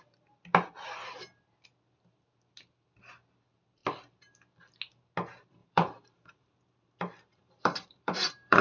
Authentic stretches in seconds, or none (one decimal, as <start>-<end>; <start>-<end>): 0.0-5.6